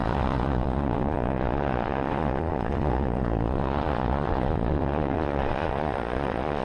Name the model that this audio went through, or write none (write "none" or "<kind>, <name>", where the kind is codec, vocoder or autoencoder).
vocoder, Vocos